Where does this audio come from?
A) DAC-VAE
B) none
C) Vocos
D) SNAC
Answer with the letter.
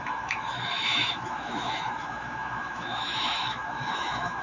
A